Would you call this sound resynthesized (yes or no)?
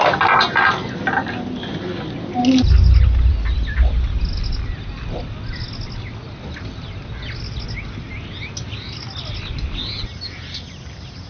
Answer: no